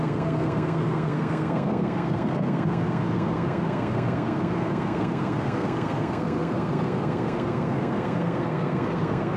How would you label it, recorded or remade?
remade